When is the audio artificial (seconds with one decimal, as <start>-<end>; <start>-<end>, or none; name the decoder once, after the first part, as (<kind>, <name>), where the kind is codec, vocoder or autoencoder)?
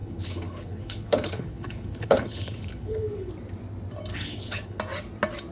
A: 0.0-3.3 (codec, HILCodec); 4.1-4.8